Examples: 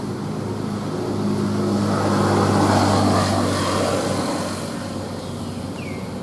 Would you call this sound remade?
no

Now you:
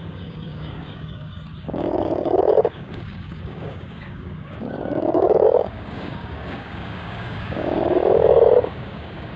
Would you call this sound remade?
yes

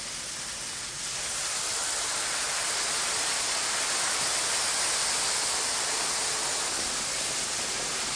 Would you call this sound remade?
no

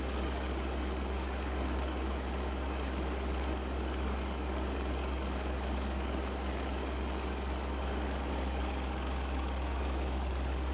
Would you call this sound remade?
yes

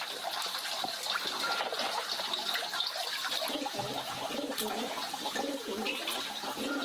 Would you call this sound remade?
no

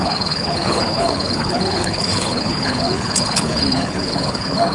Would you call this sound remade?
yes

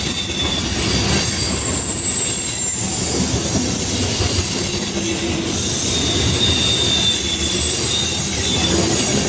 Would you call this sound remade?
no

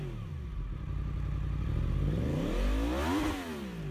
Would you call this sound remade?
no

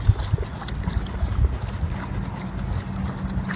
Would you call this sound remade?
no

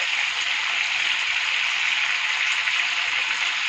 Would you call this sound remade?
no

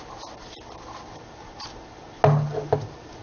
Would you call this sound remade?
no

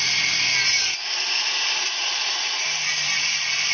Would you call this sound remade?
no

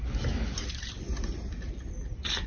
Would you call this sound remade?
no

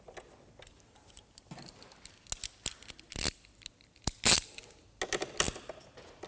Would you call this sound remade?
no